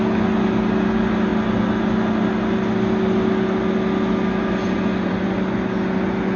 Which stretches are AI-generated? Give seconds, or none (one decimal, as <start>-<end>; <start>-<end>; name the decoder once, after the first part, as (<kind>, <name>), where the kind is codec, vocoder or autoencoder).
none